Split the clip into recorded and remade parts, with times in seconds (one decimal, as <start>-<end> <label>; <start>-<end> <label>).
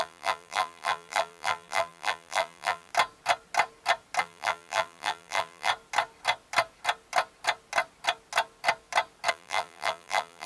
0.0-2.9 remade; 2.9-4.2 recorded; 4.2-5.7 remade; 5.7-9.3 recorded; 9.3-10.5 remade